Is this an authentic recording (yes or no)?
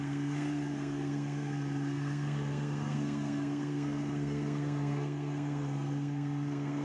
no